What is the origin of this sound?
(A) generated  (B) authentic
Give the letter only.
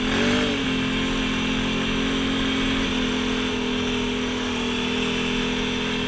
B